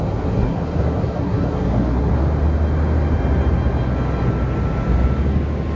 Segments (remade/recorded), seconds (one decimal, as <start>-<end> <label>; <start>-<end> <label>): 0.0-2.1 remade; 2.1-5.8 recorded